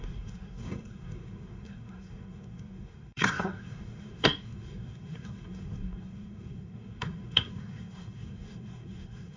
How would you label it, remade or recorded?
remade